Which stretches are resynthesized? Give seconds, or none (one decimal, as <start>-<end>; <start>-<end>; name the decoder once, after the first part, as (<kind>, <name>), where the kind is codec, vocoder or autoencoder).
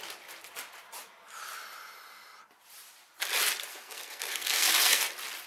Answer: 3.7-5.1 (codec, SNAC)